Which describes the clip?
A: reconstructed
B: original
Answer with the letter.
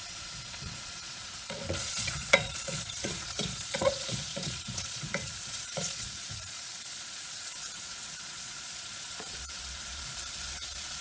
A